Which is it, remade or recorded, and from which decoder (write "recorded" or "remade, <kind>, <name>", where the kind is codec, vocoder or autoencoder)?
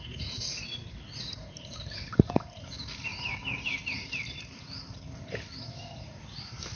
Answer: recorded